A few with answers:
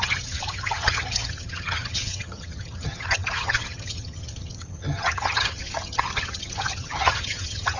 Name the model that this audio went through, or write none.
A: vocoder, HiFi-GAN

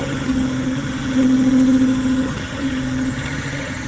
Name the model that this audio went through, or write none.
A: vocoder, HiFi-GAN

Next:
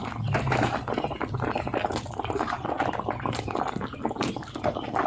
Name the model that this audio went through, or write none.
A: none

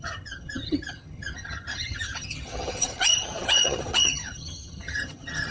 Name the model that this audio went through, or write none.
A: vocoder, HiFi-GAN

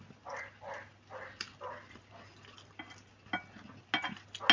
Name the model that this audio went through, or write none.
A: none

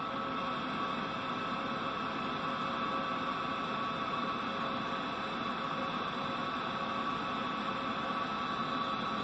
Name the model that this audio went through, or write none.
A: none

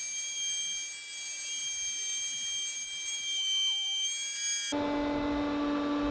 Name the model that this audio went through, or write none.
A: none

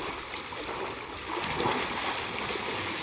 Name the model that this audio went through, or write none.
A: none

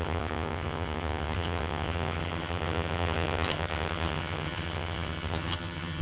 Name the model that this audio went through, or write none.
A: vocoder, HiFi-GAN